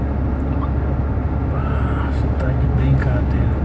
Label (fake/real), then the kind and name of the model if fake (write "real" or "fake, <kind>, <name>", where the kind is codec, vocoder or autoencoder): real